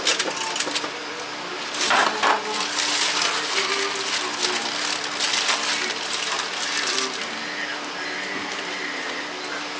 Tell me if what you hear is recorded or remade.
recorded